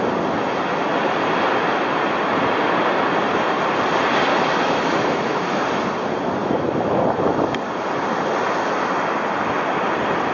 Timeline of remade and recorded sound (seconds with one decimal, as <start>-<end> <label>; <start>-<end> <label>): 0.0-4.3 recorded; 4.3-5.6 remade; 5.6-6.4 recorded; 6.4-7.0 remade; 7.0-10.3 recorded